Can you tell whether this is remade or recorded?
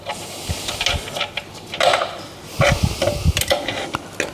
recorded